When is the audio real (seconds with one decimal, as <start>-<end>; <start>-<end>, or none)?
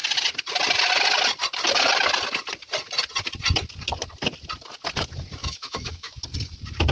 0.0-5.4; 6.2-6.9